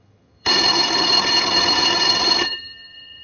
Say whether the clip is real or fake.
fake